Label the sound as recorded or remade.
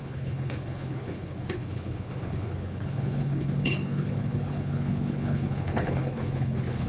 remade